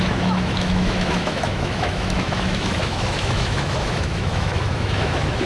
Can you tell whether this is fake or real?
fake